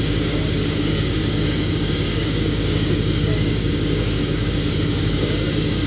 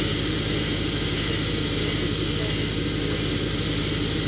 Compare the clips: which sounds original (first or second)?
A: second